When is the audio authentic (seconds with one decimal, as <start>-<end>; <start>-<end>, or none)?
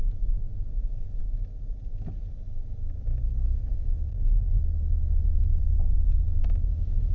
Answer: 0.0-4.1; 4.6-7.1